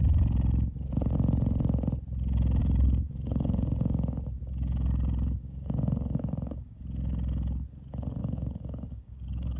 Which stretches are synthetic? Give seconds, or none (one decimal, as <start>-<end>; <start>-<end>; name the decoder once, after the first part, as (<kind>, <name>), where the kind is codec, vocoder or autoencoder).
2.6-6.8 (codec, DAC); 8.2-9.6